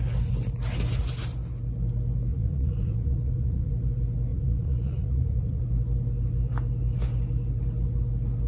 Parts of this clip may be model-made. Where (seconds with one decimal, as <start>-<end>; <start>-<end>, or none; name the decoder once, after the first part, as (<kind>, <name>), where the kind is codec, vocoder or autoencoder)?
2.3-3.7 (vocoder, Vocos); 4.3-5.6